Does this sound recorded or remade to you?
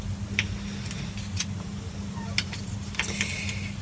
recorded